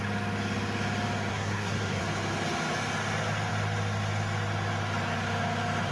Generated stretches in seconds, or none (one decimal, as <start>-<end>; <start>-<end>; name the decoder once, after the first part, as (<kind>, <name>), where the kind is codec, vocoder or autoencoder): 1.3-2.0 (codec, SNAC)